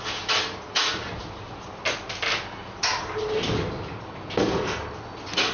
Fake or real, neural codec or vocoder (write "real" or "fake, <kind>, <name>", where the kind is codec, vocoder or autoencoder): real